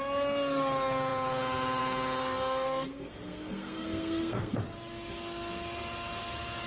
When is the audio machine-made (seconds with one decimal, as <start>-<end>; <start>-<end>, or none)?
2.2-4.6